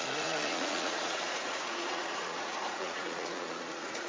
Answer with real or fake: fake